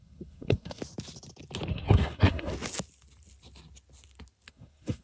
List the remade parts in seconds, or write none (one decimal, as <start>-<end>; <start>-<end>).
0.0-0.8; 1.7-2.5; 4.5-5.0